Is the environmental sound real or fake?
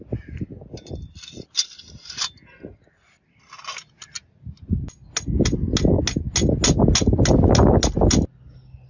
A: real